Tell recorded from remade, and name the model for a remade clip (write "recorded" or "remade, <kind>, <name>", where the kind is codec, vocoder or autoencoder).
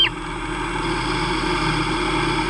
recorded